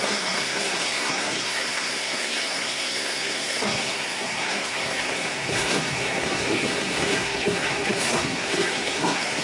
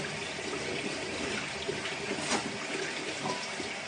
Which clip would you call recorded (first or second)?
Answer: second